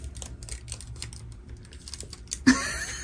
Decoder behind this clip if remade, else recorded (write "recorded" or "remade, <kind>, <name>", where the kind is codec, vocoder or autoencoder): recorded